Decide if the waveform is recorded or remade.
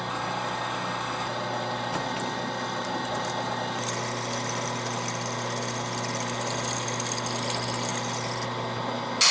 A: recorded